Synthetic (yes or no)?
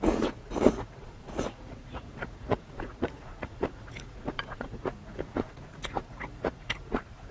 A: yes